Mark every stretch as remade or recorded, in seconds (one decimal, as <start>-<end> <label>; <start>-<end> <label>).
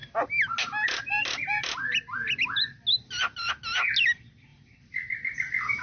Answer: 0.0-5.8 recorded